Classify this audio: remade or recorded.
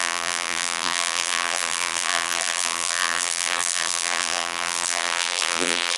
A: remade